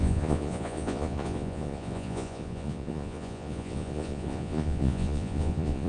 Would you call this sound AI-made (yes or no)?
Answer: yes